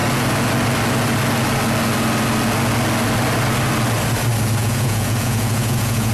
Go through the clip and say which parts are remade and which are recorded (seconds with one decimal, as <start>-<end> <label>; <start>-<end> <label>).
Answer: 0.0-4.6 recorded; 4.6-6.1 remade